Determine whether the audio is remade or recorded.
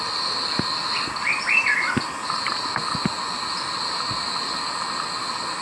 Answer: recorded